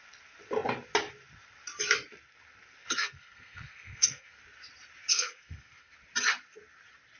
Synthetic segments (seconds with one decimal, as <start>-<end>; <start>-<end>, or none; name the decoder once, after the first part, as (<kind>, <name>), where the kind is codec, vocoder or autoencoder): 2.8-4.4 (codec, SNAC); 5.1-5.9